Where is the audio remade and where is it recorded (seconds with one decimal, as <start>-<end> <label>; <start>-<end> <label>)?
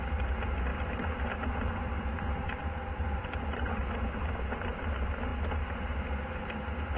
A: 0.0-0.7 recorded; 0.7-3.8 remade; 3.8-7.0 recorded